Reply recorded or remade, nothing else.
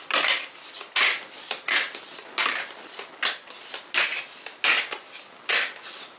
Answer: recorded